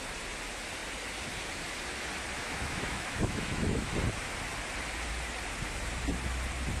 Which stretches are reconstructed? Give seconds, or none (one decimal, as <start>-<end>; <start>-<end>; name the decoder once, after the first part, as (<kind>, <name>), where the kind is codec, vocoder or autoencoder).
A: 2.4-3.9 (autoencoder, DAC-VAE)

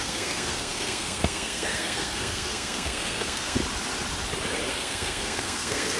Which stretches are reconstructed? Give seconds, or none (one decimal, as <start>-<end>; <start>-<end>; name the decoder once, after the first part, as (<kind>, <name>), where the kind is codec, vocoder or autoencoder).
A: 0.0-3.6 (codec, SNAC); 4.7-6.0

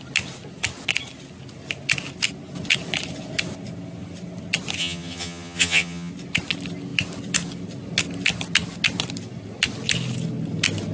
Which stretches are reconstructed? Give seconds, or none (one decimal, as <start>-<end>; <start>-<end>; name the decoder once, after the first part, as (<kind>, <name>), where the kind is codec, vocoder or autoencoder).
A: 4.8-6.1 (vocoder, HiFi-GAN)

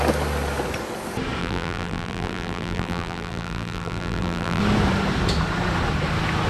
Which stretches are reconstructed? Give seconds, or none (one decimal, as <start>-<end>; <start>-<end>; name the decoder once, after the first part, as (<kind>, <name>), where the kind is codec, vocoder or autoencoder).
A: 1.4-4.6 (vocoder, BigVGAN v2)